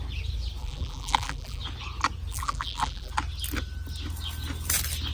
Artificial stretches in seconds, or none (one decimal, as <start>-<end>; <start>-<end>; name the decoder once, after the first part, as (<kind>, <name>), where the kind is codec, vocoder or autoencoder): 0.6-1.6 (vocoder, BigVGAN v2); 2.3-3.1